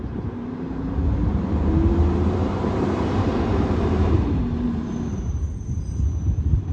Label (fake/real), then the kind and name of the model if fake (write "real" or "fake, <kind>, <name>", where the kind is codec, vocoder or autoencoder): fake, vocoder, BigVGAN v2